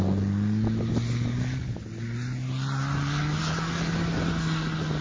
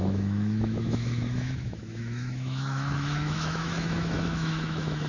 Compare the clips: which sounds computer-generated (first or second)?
second